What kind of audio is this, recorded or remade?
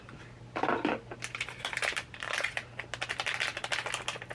recorded